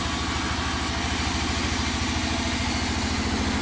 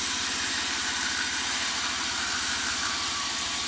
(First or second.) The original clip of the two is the first